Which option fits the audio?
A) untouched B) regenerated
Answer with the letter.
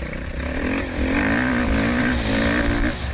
A